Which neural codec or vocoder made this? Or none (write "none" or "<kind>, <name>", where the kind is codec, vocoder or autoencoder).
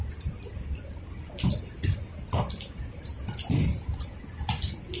none